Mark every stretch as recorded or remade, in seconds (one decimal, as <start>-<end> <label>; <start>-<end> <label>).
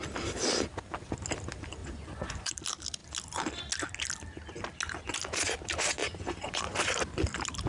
0.0-1.8 recorded; 1.8-2.5 remade; 2.5-6.0 recorded; 6.0-6.6 remade; 6.6-7.7 recorded